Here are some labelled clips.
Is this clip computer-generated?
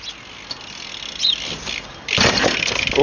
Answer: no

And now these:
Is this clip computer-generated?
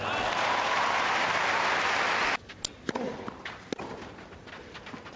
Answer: no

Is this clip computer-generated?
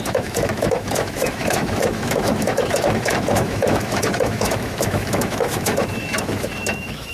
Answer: yes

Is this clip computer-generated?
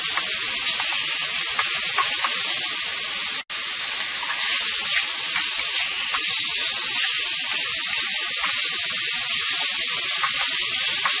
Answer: no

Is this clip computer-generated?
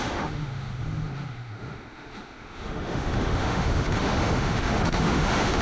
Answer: yes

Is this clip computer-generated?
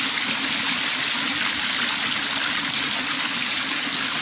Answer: no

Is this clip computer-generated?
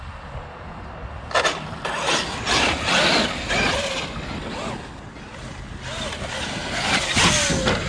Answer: no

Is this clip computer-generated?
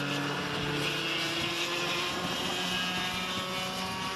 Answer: no